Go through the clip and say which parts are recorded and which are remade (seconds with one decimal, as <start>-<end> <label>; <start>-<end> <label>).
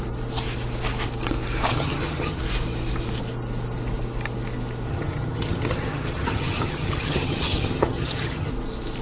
0.0-1.7 recorded; 1.7-2.4 remade; 2.4-4.9 recorded; 4.9-8.5 remade; 8.5-9.0 recorded